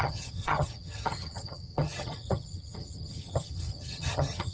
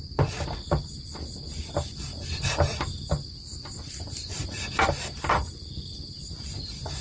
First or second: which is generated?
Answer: first